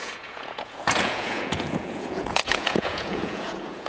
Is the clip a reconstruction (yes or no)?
yes